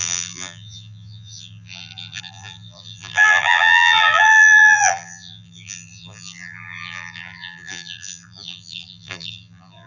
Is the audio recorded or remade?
remade